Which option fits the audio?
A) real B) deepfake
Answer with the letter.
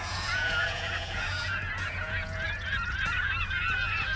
B